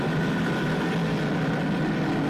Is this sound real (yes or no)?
yes